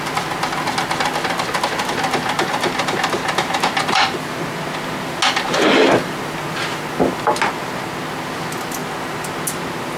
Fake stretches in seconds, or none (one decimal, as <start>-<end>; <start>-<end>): none